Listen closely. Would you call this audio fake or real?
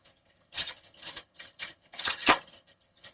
fake